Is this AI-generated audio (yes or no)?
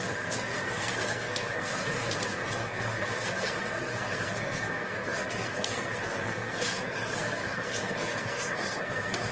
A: yes